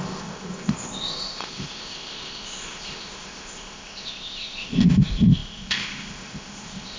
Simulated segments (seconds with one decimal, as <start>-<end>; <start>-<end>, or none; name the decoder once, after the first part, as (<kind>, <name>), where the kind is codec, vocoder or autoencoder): 0.0-7.0 (codec, ZipCodec)